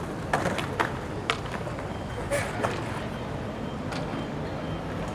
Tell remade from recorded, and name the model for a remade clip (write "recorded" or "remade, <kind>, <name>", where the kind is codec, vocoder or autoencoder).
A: recorded